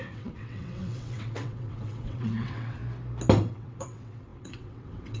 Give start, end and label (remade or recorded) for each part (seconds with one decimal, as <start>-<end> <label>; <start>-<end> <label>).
0.0-2.8 remade; 2.8-3.5 recorded; 3.5-5.2 remade